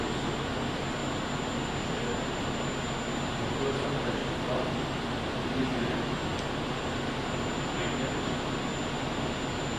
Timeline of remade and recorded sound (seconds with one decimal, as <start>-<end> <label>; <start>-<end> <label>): 0.0-9.8 recorded